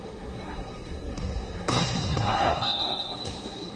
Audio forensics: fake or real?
fake